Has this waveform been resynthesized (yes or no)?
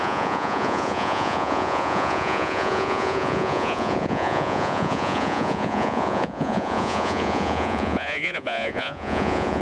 yes